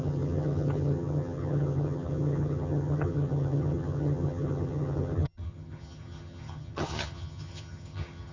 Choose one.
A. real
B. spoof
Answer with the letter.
B